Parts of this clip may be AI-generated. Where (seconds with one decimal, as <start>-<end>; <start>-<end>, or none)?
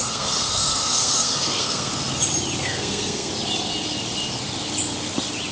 0.0-1.9; 2.6-3.3